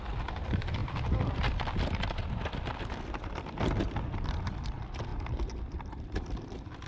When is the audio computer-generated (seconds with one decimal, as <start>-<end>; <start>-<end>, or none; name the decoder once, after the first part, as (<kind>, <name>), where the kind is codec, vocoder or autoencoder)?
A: 0.8-2.8 (vocoder, BigVGAN v2); 5.1-6.3

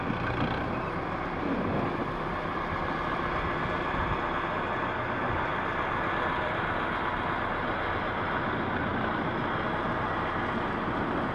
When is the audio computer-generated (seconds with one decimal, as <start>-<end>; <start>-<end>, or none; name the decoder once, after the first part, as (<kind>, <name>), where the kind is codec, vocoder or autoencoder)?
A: 5.5-7.1 (vocoder, BigVGAN v2); 8.9-9.9

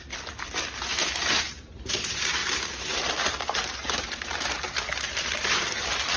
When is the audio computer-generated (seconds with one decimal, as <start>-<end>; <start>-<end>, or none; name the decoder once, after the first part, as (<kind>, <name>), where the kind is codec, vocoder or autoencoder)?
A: 0.9-1.9 (vocoder, BigVGAN v2); 2.4-3.0; 3.8-4.3

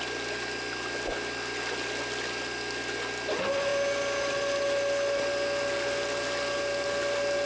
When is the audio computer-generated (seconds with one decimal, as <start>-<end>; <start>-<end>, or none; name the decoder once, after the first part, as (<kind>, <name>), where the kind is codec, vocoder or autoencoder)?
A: none

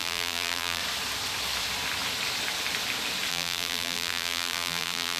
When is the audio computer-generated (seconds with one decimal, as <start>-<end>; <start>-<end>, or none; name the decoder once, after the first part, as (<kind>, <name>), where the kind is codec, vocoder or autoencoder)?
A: 0.0-0.8 (vocoder, BigVGAN v2); 3.3-5.2